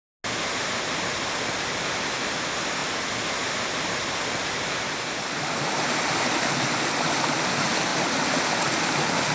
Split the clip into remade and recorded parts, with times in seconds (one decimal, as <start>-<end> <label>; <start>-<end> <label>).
0.0-9.3 recorded